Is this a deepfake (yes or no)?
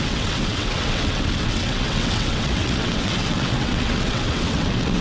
yes